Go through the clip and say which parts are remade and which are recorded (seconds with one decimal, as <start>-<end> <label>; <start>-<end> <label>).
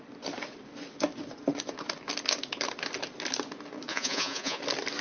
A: 0.0-3.9 recorded; 3.9-4.6 remade; 4.6-5.0 recorded